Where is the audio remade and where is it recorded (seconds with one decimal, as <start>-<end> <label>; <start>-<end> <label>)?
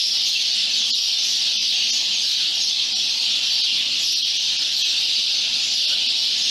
0.0-6.5 recorded